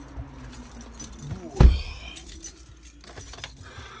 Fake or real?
real